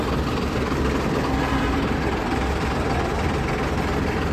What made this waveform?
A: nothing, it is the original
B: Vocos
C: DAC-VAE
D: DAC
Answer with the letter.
A